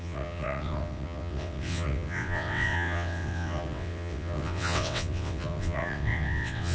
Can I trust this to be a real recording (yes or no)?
no